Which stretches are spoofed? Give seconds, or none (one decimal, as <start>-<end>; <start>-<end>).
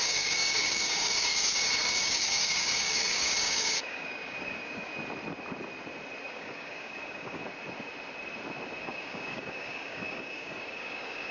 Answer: 0.0-4.9; 6.3-7.4; 8.8-11.3